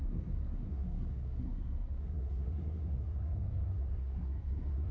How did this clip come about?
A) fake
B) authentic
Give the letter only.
A